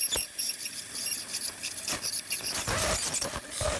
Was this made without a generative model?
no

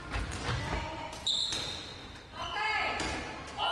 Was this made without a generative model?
yes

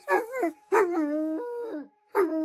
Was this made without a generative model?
no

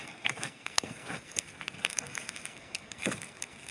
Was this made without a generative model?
no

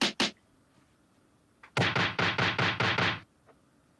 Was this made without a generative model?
yes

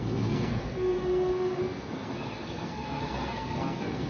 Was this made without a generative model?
no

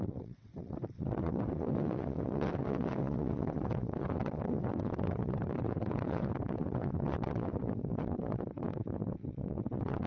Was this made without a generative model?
no